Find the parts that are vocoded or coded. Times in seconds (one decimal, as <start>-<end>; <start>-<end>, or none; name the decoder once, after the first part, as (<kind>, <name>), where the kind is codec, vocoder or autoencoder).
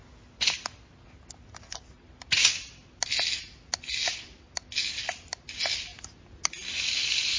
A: none